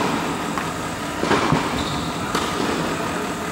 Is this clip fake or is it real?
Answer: real